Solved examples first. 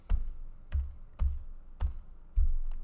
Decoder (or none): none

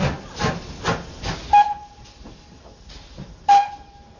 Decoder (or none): none